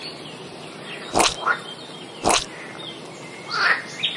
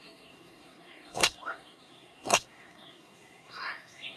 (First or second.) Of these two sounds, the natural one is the first